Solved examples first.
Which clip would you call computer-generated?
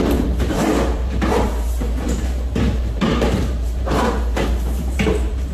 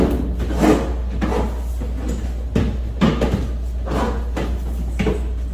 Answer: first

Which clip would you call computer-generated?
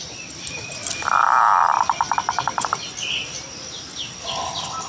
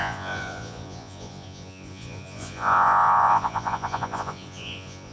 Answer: second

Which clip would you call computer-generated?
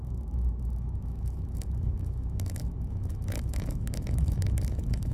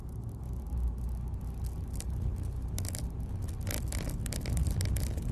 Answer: first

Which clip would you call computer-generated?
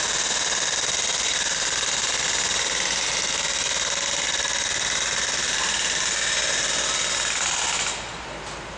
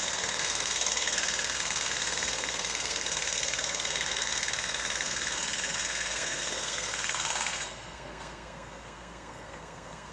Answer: second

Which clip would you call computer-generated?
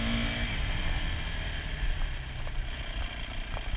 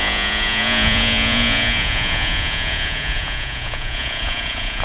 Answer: second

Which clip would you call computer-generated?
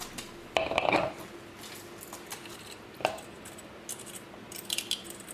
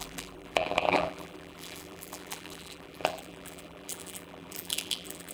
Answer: second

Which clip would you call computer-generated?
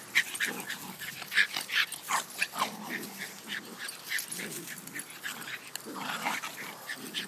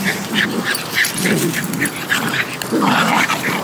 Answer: second